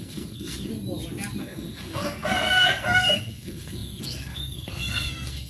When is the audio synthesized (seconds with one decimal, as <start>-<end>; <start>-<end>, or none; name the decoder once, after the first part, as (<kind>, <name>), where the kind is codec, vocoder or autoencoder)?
0.0-0.7 (codec, SNAC); 1.4-5.5